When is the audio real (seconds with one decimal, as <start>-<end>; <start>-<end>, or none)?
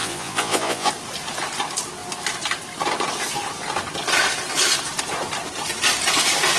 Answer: 0.9-6.6